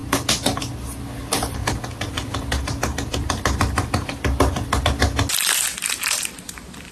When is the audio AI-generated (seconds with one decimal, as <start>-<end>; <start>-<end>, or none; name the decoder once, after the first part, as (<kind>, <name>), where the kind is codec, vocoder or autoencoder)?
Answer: 1.6-4.8 (vocoder, BigVGAN v2)